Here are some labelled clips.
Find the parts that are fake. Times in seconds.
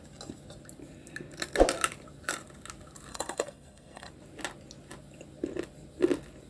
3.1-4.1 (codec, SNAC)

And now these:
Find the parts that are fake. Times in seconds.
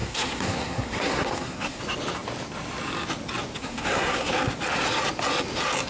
0.0-1.8 (codec, SNAC); 3.6-4.3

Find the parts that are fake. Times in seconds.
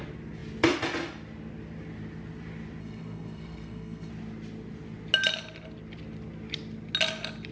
2.8-4.1 (codec, SNAC)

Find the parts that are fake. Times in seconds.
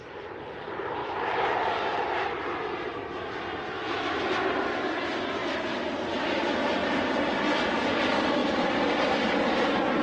none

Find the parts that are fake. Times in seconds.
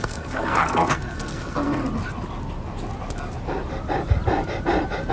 0.0-1.8 (codec, SNAC)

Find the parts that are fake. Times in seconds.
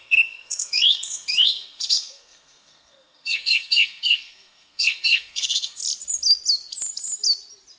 0.0-5.8 (codec, SNAC)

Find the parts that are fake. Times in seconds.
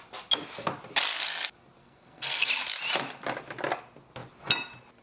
1.8-2.5 (codec, SNAC)